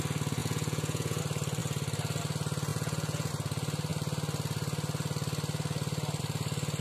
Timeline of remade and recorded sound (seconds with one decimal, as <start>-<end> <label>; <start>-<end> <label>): 0.0-0.4 recorded; 0.4-1.2 remade; 1.2-2.7 recorded; 2.7-3.3 remade; 3.3-6.8 recorded